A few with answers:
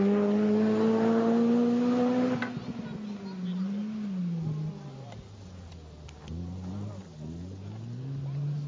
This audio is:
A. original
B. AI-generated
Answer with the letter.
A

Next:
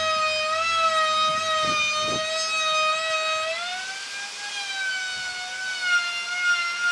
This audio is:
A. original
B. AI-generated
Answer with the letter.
A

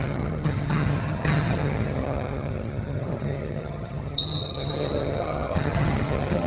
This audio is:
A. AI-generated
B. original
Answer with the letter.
A